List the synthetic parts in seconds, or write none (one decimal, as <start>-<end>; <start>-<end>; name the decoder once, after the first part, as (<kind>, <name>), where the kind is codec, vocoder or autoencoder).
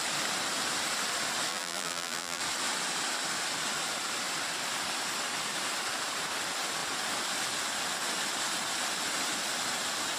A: 1.5-2.4 (vocoder, BigVGAN v2)